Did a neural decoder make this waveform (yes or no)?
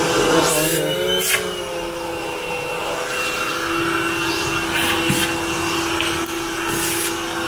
no